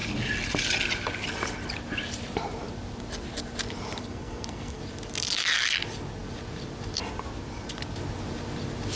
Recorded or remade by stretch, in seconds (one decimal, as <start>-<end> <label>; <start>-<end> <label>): 0.0-4.0 recorded; 4.0-4.8 remade; 4.8-9.0 recorded